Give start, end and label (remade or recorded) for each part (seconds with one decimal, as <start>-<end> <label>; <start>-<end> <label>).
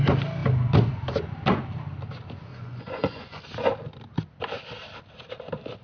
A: 0.0-2.5 recorded; 2.5-3.4 remade; 3.4-5.8 recorded